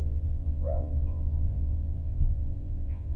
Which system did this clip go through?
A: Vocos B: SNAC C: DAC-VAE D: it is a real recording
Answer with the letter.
A